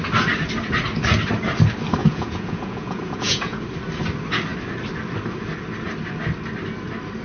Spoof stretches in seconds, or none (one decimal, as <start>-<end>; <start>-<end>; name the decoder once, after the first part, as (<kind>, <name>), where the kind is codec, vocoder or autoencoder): 2.0-3.6 (vocoder, Vocos)